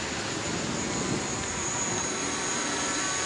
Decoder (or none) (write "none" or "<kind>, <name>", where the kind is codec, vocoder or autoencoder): none